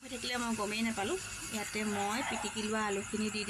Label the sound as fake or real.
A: real